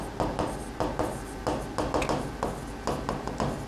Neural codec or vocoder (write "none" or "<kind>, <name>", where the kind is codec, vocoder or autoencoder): none